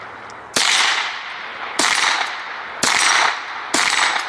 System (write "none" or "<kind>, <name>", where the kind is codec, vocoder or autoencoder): none